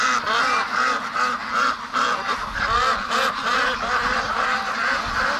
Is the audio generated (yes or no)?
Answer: no